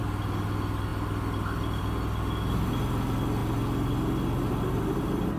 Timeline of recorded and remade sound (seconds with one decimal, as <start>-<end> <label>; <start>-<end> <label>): 0.0-5.4 recorded